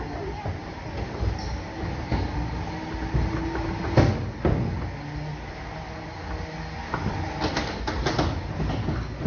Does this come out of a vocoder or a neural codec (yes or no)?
no